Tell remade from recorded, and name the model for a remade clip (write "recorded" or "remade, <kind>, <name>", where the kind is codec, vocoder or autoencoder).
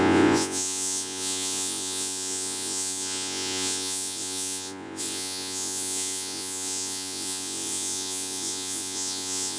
remade, vocoder, Vocos